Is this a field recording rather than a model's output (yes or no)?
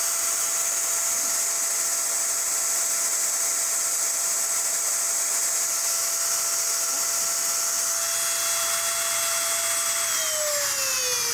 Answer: yes